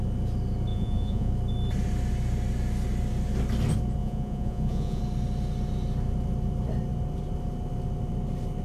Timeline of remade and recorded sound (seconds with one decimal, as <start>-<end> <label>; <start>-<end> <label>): 0.0-0.7 recorded; 0.7-1.3 remade; 1.3-4.0 recorded; 4.0-5.0 remade; 5.0-8.6 recorded

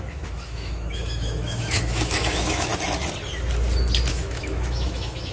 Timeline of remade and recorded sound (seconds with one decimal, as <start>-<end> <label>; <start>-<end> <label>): 0.0-2.7 remade; 2.7-4.1 recorded; 4.1-5.3 remade

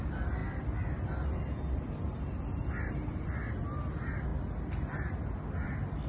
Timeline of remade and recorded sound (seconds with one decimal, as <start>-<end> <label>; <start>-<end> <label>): 0.0-6.1 recorded

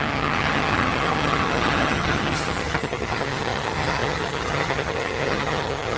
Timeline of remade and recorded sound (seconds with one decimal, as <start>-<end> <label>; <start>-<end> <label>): 0.0-6.0 remade

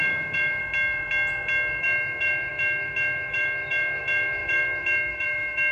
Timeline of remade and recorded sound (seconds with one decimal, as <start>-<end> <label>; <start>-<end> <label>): 0.0-0.6 remade; 0.6-1.8 recorded; 1.8-5.7 remade

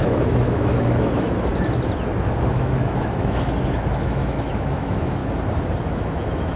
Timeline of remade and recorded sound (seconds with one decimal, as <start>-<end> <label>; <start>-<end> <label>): 0.0-1.5 remade; 1.5-2.5 recorded; 2.5-5.2 remade; 5.2-5.8 recorded; 5.8-6.6 remade

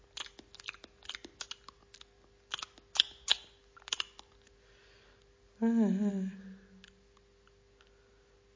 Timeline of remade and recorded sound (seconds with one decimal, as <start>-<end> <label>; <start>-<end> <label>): 0.0-8.6 recorded